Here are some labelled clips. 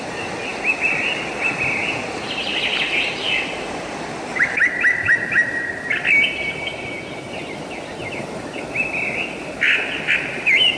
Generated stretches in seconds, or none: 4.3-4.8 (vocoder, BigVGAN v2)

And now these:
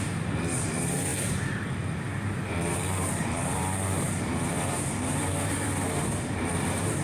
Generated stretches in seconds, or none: 0.0-7.0 (vocoder, BigVGAN v2)